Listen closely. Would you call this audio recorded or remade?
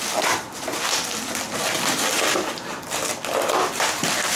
recorded